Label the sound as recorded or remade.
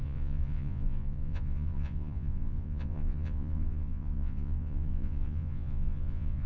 remade